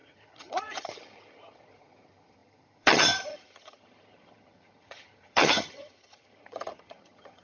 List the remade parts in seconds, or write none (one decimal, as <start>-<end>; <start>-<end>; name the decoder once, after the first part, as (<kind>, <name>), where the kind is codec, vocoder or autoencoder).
0.0-7.4 (vocoder, HiFi-GAN)